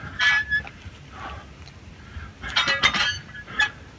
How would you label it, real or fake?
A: real